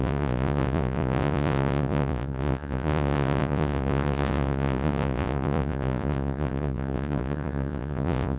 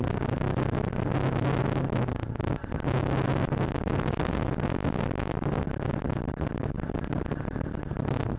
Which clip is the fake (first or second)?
first